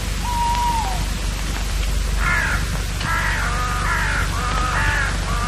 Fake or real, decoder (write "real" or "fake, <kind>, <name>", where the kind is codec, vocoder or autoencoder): real